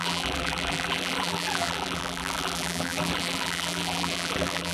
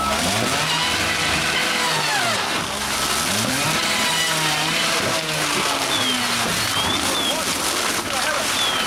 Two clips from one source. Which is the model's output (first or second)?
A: first